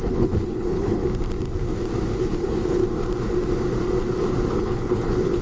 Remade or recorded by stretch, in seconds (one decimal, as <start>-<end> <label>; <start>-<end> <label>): 0.0-1.0 remade; 1.0-2.2 recorded; 2.2-2.8 remade; 2.8-4.5 recorded; 4.5-5.4 remade